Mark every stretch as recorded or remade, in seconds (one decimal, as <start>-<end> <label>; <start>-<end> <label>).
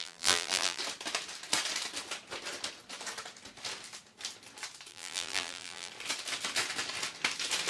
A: 0.0-0.8 remade; 0.8-4.9 recorded; 4.9-5.9 remade; 5.9-7.7 recorded